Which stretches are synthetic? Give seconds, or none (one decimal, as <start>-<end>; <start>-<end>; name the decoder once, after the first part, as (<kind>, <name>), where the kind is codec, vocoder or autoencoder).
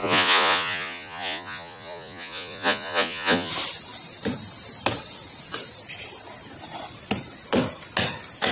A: 0.0-3.5 (vocoder, Vocos)